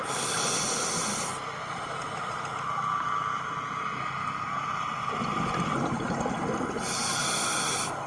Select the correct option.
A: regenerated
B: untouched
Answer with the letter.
B